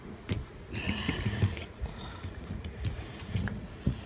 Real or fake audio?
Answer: fake